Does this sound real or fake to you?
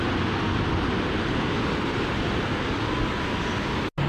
real